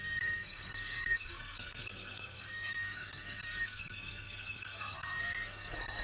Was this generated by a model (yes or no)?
yes